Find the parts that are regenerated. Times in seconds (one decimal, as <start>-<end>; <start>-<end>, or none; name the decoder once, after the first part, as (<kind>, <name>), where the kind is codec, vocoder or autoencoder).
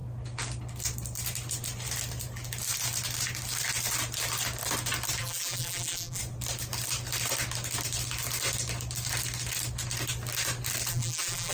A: 5.2-6.2 (vocoder, BigVGAN v2); 10.9-11.5